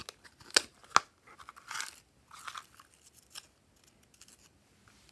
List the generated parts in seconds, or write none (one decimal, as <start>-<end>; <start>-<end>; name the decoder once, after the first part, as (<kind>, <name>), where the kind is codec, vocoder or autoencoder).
none